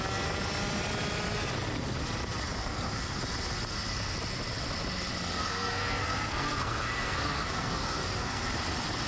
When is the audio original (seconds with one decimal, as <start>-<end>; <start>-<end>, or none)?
0.0-2.6; 3.2-5.4; 8.5-9.1